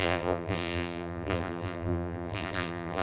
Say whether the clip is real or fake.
fake